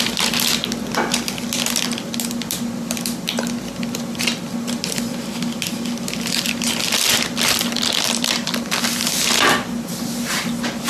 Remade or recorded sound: recorded